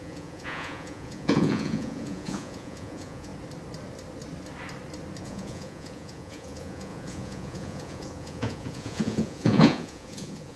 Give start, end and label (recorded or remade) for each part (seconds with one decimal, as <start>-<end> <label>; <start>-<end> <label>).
0.0-3.3 remade; 3.3-5.2 recorded; 5.2-10.6 remade